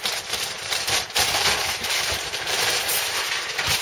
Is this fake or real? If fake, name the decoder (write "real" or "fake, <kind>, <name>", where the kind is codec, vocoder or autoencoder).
fake, vocoder, BigVGAN v2